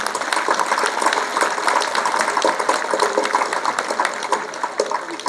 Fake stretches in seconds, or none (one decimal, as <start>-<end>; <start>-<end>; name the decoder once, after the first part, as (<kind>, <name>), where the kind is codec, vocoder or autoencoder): none